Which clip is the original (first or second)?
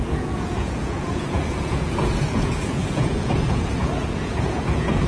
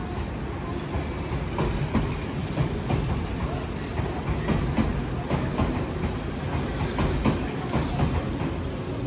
second